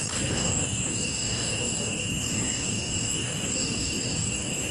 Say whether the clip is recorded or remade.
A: remade